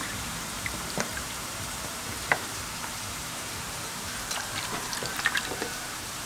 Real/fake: fake